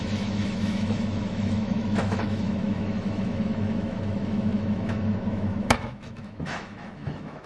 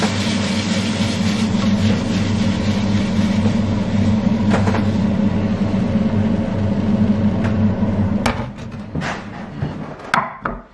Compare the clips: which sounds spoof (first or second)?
first